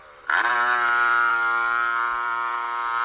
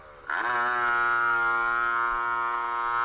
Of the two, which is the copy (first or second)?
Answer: first